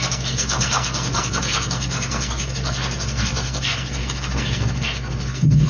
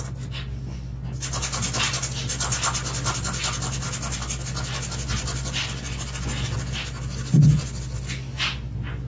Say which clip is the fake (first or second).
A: first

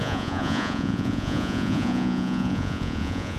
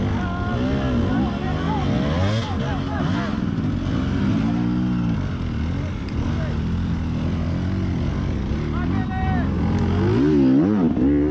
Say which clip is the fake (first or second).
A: first